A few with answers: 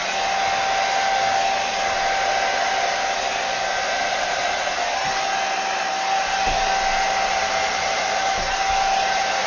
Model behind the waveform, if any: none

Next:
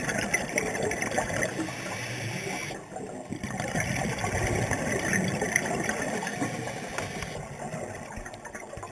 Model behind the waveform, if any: none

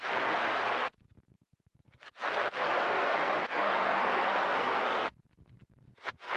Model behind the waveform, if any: codec, SNAC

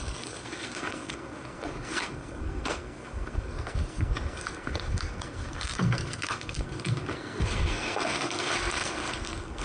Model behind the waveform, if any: codec, SNAC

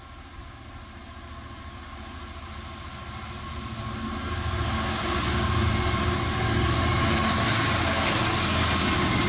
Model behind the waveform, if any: none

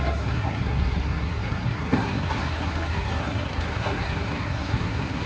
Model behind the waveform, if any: codec, SNAC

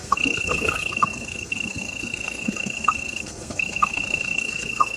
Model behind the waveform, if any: codec, SNAC